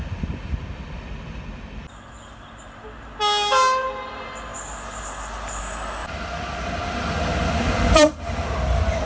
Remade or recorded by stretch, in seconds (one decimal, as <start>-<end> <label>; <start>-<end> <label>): 0.0-6.0 recorded; 6.0-9.1 remade